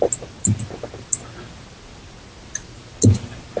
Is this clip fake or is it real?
real